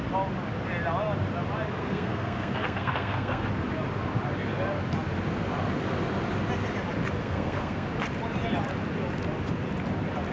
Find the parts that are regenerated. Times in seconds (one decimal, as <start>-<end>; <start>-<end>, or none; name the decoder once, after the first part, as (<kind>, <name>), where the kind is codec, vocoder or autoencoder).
1.8-3.5 (codec, SNAC); 7.2-7.9